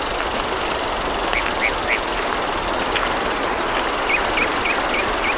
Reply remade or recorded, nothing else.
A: recorded